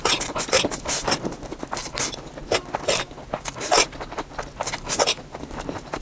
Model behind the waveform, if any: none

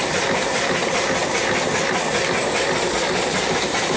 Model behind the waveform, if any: none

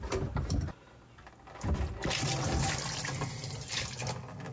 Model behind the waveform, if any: none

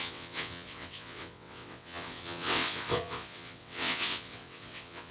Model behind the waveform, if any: vocoder, WaveNeXt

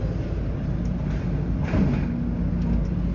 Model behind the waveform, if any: none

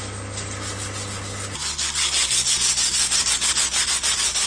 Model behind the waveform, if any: none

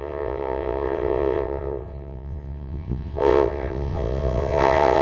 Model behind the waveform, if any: vocoder, WaveNeXt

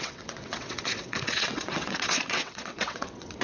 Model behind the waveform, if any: vocoder, WaveNeXt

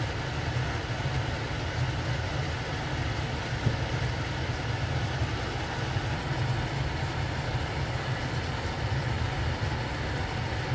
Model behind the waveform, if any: none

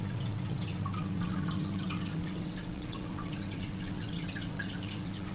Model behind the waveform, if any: vocoder, WaveNeXt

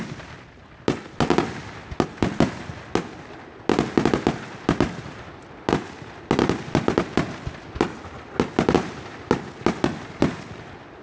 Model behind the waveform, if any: none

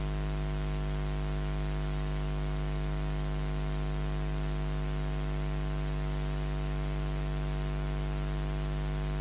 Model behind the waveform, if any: none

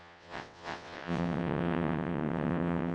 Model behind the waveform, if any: vocoder, WaveNeXt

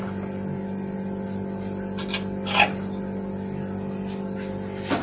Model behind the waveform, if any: none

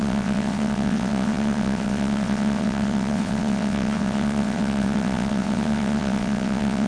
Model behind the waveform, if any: vocoder, WaveNeXt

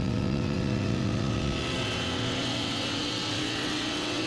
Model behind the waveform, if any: vocoder, WaveNeXt